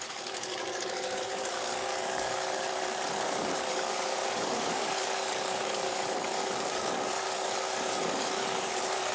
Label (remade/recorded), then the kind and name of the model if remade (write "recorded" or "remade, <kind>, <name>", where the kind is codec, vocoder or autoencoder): remade, codec, DAC